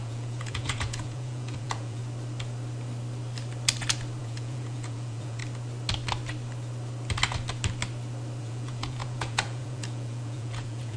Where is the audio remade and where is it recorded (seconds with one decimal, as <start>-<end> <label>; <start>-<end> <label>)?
0.0-2.0 remade; 2.0-4.2 recorded; 4.2-5.4 remade; 5.4-8.4 recorded; 8.4-11.0 remade